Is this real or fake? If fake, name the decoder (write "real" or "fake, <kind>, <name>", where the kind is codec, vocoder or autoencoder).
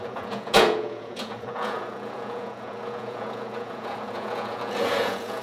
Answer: fake, vocoder, Vocos